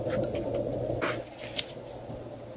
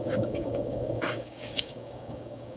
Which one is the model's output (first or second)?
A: second